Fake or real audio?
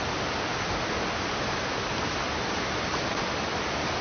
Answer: real